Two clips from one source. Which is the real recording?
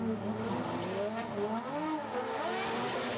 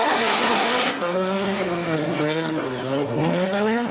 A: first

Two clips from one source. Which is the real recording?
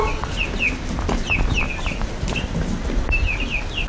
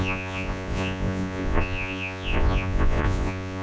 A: first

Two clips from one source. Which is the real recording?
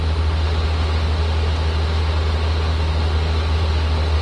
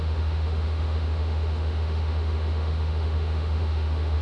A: first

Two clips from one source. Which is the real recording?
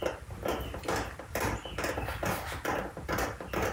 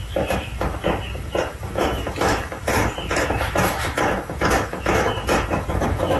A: first